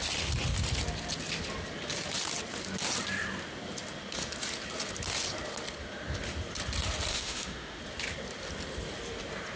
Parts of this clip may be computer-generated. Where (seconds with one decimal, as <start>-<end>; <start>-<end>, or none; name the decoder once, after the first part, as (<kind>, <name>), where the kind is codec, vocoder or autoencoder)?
7.1-7.8 (autoencoder, DAC-VAE)